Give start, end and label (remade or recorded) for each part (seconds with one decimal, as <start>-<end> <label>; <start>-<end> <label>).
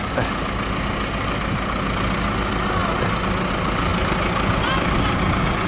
0.0-5.7 recorded